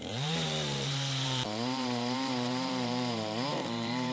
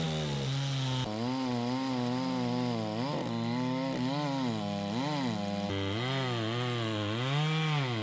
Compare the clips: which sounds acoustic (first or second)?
second